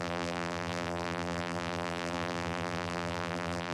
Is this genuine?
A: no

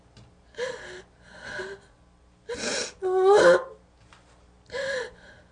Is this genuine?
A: yes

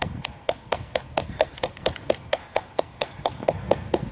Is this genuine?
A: no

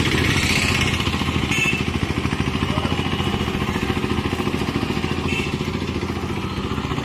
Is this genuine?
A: yes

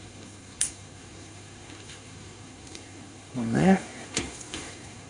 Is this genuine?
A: no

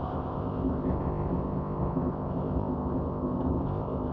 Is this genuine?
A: no